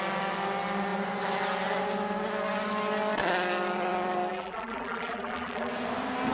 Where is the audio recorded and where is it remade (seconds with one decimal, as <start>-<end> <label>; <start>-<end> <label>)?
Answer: 0.0-4.3 recorded; 4.3-5.7 remade; 5.7-6.3 recorded